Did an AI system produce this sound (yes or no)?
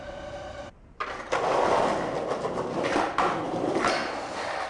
yes